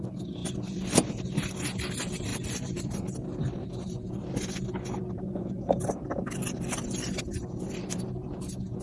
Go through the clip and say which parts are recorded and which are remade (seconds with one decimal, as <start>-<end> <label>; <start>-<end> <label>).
0.0-2.3 recorded; 2.3-4.5 remade; 4.5-8.8 recorded